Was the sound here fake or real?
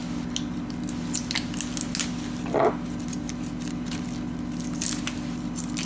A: real